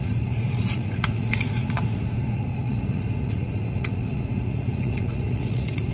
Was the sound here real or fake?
fake